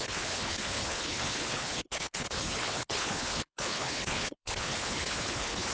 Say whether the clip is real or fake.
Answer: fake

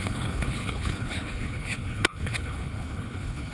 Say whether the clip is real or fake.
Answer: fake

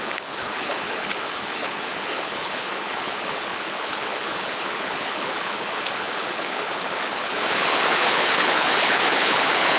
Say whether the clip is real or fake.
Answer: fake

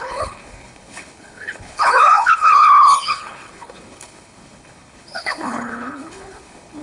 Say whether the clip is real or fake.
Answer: fake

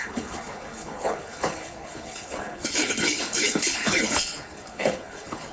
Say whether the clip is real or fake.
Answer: fake